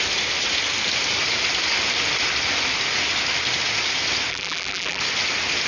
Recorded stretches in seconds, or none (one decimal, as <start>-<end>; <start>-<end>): 0.0-4.3; 5.0-5.7